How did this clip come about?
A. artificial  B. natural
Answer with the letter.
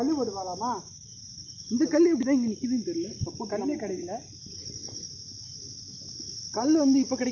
B